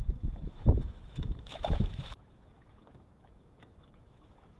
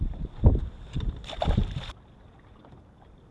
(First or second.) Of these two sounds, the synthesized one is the first